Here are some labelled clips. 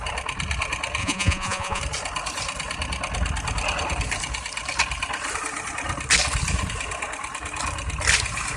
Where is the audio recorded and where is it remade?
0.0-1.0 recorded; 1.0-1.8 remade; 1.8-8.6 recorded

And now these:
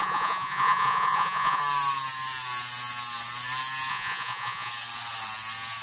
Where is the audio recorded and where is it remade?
0.0-1.6 remade; 1.6-3.9 recorded; 3.9-4.7 remade; 4.7-5.8 recorded